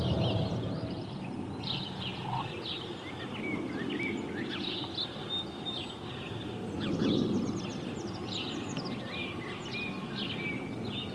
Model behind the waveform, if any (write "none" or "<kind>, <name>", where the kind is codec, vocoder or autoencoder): none